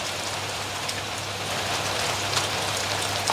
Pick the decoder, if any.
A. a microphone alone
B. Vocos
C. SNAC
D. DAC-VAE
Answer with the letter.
A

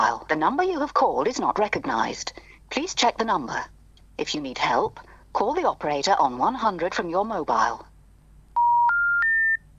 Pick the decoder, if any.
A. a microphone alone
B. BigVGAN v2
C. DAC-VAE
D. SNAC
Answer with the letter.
A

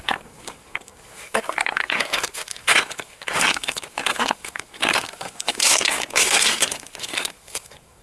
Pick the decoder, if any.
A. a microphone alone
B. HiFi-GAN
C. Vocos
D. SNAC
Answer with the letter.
D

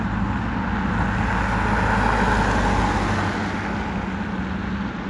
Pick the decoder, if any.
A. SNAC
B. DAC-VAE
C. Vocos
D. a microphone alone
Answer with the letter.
D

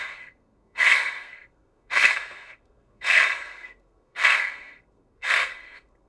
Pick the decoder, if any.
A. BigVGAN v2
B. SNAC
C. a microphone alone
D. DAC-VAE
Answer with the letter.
B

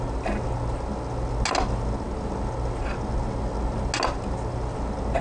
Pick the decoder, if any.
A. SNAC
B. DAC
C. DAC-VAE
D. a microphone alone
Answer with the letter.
D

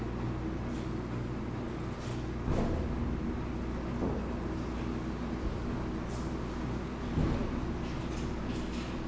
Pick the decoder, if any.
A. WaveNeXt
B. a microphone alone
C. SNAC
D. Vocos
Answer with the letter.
B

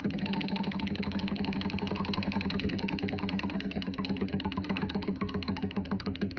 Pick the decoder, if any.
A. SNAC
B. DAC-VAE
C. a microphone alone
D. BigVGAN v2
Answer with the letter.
A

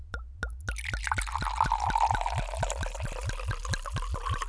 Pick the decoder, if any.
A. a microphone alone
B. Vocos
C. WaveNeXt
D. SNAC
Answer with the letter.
A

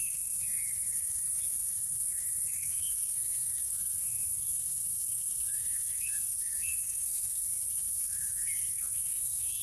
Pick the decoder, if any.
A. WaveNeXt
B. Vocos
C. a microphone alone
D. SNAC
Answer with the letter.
D